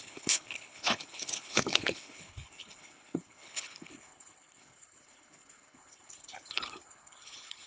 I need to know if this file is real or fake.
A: fake